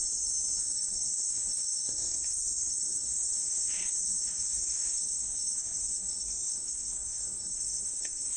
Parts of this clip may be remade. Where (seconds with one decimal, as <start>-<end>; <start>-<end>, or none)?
0.6-8.4